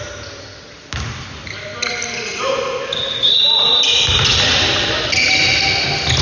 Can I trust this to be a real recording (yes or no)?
yes